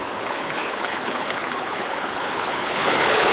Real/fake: fake